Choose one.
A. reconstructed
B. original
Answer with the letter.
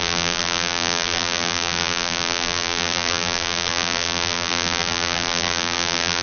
A